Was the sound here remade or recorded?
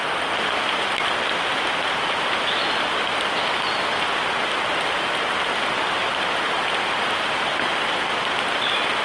remade